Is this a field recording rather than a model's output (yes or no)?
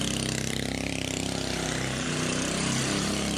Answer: no